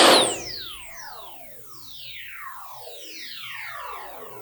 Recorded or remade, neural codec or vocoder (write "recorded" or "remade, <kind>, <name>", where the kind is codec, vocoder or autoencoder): recorded